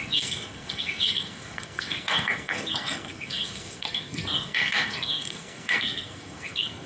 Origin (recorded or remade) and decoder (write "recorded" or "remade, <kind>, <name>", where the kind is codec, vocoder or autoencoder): remade, codec, SNAC